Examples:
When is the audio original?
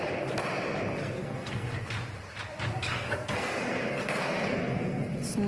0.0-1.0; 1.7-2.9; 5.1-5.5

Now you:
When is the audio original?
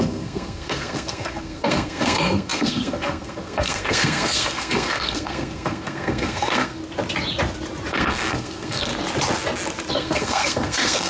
6.8-7.9; 8.9-9.9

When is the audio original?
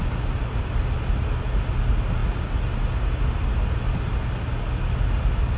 0.0-5.6